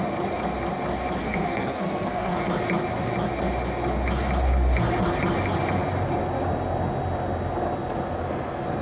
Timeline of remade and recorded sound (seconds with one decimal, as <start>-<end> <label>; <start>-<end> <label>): 0.0-1.2 recorded; 1.2-2.4 remade; 2.4-8.8 recorded